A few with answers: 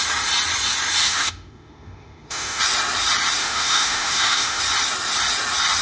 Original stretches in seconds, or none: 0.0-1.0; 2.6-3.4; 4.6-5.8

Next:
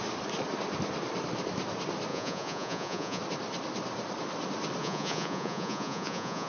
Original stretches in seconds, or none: 0.0-2.1; 3.2-4.8

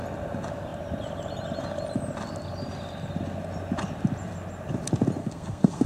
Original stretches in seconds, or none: 0.0-5.2

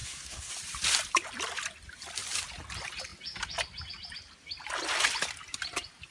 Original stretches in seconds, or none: 0.5-6.1

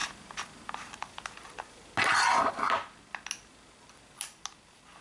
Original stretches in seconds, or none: 0.0-5.0

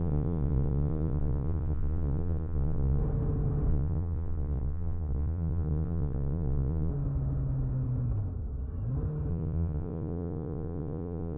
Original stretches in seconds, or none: 3.0-3.7; 6.9-9.3

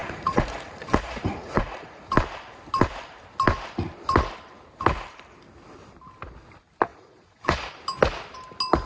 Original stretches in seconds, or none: 2.1-6.9; 7.7-8.9